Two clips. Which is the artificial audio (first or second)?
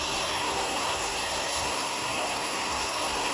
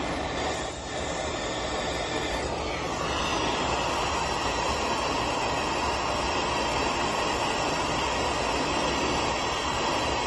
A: first